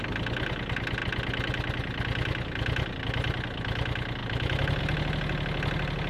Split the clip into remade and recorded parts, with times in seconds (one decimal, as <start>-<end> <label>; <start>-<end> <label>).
0.0-6.1 recorded